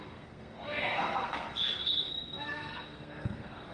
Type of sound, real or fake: fake